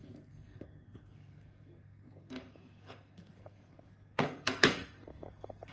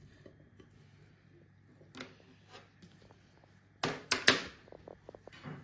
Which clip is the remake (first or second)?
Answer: first